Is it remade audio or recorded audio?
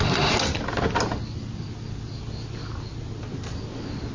recorded